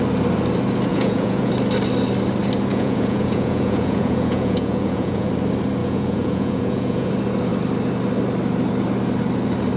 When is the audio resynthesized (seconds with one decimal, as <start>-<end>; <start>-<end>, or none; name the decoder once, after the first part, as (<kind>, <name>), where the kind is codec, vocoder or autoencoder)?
0.9-1.5 (vocoder, Vocos); 2.7-5.3; 5.8-7.1